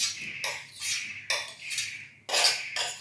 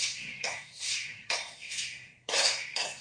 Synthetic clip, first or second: second